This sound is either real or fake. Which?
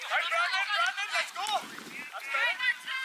real